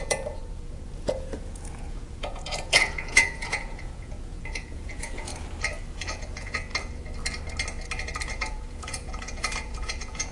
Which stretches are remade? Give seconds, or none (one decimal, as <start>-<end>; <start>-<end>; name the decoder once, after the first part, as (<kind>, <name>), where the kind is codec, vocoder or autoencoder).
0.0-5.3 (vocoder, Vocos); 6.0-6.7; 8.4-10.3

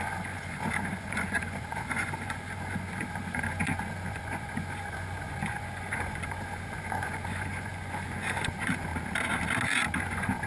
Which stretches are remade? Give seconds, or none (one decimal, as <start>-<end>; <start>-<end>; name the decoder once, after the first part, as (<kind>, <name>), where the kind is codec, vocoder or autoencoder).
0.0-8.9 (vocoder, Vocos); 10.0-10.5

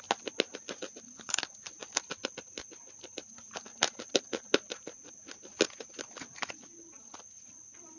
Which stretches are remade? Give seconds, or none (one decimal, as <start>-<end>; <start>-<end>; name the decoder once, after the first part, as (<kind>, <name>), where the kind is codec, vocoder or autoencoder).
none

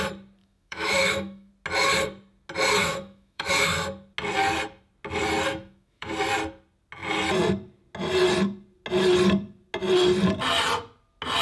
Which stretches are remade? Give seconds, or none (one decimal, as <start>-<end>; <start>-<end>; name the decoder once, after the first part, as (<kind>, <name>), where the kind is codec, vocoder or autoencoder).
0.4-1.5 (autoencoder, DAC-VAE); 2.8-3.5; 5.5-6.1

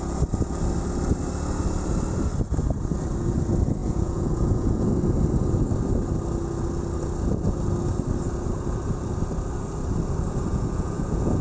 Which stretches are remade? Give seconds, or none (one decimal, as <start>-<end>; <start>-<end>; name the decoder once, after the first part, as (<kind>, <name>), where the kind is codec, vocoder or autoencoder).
3.8-4.9 (vocoder, Vocos); 10.5-11.4

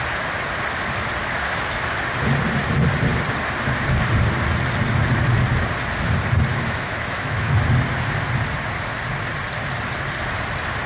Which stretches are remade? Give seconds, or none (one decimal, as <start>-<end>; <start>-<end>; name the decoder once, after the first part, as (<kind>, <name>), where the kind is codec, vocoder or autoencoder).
1.2-1.9 (autoencoder, DAC-VAE); 6.5-7.6